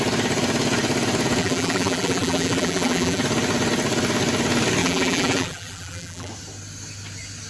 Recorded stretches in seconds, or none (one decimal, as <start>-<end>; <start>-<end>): 0.0-1.4; 3.2-4.8; 6.3-7.5